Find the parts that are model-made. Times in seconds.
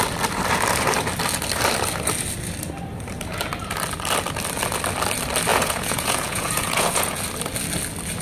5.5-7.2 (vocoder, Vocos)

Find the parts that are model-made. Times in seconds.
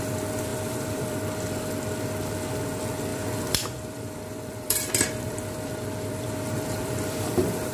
0.5-1.2 (vocoder, BigVGAN v2); 3.1-7.7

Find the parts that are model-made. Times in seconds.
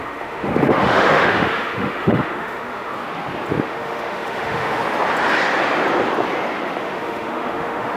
0.0-2.9 (autoencoder, DAC-VAE); 3.6-4.8; 6.8-8.0